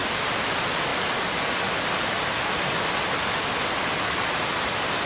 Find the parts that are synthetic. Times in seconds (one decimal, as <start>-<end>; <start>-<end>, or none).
none

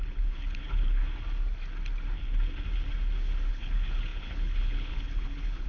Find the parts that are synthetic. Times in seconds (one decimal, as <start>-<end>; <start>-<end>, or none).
0.0-1.0; 3.5-5.7

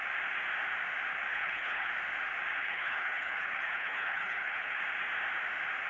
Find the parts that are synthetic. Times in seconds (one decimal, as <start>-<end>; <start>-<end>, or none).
1.3-1.9; 2.6-4.8

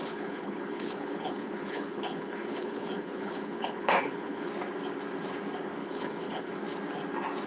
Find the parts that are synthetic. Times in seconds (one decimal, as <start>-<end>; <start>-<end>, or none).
0.0-4.5; 5.8-6.5

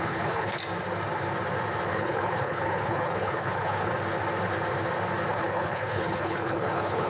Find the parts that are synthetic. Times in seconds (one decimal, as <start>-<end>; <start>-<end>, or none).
0.0-0.6; 1.9-3.9; 5.3-7.1

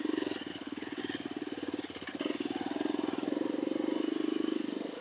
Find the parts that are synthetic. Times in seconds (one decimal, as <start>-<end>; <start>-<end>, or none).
0.5-1.0

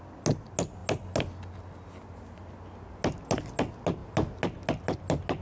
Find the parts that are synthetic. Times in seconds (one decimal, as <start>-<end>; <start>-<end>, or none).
none